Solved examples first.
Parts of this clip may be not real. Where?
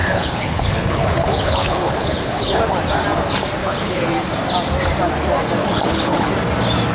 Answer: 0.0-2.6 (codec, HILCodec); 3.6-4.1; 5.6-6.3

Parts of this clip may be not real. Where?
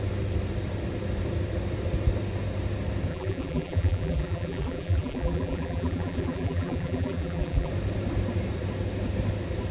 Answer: 3.1-7.7 (vocoder, BigVGAN v2)